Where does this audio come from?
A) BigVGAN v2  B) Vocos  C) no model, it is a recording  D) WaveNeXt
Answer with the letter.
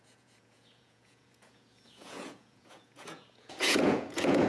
B